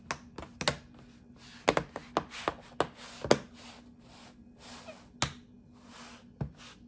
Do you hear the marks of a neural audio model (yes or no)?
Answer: no